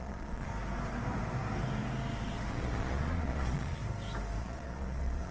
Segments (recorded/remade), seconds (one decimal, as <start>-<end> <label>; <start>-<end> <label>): 0.0-0.5 remade; 0.5-2.5 recorded; 2.5-3.8 remade; 3.8-4.4 recorded; 4.4-5.3 remade